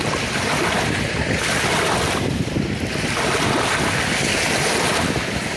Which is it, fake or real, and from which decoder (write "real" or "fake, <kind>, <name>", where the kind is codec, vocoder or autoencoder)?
real